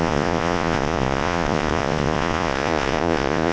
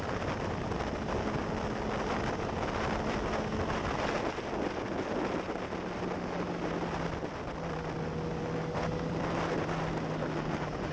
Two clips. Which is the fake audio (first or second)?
first